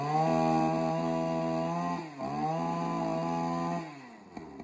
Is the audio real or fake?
real